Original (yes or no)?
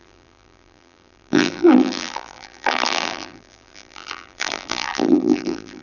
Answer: no